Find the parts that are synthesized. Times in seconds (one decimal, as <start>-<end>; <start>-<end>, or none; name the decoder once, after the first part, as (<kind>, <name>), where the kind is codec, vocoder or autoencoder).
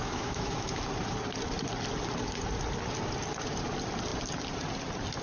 0.0-0.8 (autoencoder, DAC-VAE)